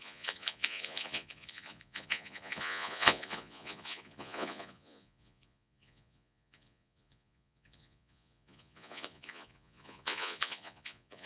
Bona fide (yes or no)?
no